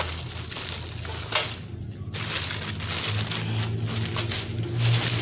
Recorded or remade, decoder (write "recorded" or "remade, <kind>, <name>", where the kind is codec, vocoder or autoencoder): recorded